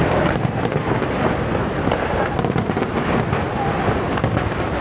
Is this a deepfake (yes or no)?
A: no